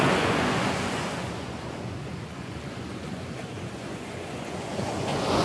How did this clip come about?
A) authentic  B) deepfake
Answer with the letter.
B